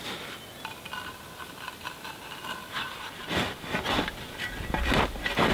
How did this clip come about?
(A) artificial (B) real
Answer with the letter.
B